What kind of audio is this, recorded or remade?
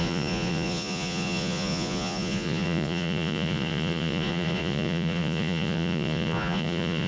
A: remade